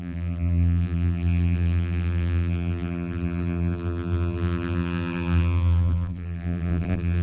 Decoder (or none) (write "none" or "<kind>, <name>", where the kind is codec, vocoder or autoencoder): vocoder, BigVGAN v2